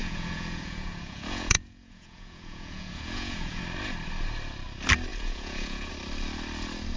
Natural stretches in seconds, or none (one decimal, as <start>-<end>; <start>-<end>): 3.6-5.1; 5.9-7.0